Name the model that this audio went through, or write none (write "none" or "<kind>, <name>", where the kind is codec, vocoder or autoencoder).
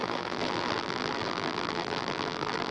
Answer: vocoder, BigVGAN v2